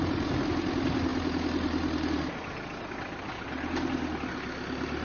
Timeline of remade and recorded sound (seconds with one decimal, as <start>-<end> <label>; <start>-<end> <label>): 0.0-5.0 recorded